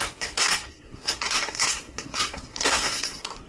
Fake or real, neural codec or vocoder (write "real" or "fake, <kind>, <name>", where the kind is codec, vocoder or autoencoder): fake, codec, SNAC